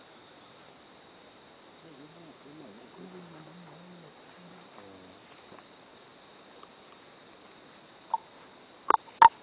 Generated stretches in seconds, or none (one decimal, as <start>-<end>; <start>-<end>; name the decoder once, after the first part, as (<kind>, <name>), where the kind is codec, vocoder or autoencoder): none